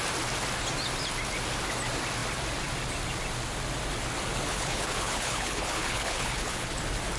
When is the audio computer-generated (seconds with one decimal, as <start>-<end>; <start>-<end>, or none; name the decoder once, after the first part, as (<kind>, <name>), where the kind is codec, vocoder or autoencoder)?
4.5-6.8 (codec, HILCodec)